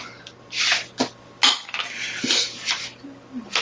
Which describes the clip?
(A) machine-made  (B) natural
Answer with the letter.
B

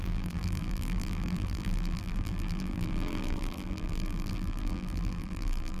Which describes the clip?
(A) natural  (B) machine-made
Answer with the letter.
B